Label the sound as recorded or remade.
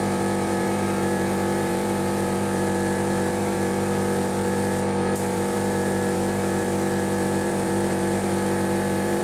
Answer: remade